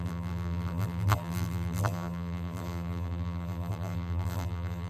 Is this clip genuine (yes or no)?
no